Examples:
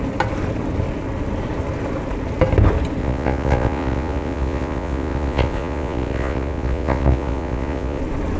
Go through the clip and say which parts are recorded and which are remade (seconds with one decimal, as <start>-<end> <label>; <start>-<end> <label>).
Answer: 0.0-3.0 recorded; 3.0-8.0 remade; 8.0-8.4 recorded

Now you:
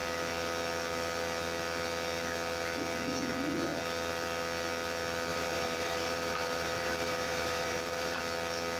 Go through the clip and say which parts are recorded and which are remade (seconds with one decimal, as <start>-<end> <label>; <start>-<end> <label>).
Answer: 0.0-5.3 recorded; 5.3-8.2 remade; 8.2-8.8 recorded

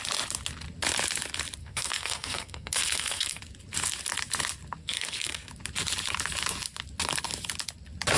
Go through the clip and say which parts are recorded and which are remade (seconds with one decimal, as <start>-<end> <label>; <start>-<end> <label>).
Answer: 0.0-1.6 recorded; 1.6-3.4 remade; 3.4-4.8 recorded; 4.8-5.5 remade; 5.5-8.2 recorded

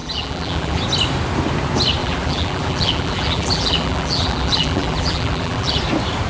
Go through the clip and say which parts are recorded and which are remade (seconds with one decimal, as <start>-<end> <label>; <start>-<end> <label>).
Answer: 0.0-0.8 remade; 0.8-2.0 recorded; 2.0-5.8 remade; 5.8-6.3 recorded